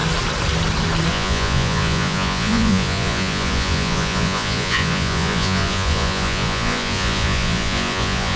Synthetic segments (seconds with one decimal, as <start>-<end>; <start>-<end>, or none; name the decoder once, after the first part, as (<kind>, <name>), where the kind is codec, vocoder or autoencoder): 1.1-8.4 (vocoder, Vocos)